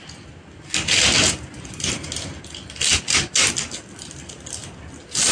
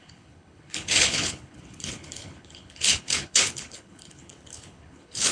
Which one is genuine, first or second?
first